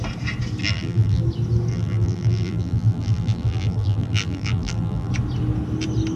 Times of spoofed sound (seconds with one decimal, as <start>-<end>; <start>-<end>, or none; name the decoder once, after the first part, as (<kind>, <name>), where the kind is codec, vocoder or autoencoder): 0.6-1.2 (vocoder, BigVGAN v2); 1.7-5.1